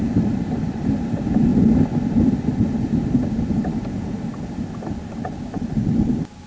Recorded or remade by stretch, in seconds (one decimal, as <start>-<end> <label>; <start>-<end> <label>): 0.0-1.5 remade; 1.5-5.4 recorded; 5.4-6.5 remade